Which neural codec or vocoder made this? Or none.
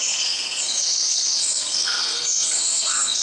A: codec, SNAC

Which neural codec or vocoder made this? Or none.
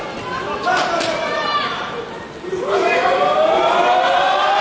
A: none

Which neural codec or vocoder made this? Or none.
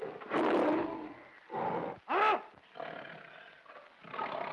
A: none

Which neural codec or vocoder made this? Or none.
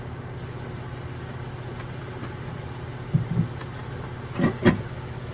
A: none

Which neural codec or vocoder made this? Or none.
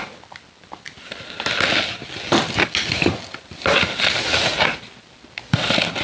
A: none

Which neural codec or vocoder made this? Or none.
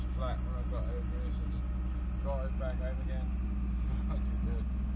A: none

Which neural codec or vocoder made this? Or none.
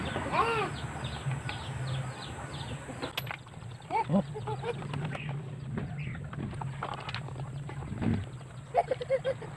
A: none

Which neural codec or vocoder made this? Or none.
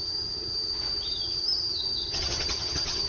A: vocoder, HiFi-GAN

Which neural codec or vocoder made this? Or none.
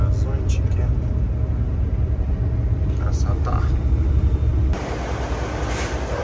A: none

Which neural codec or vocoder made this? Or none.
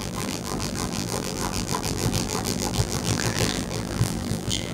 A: vocoder, BigVGAN v2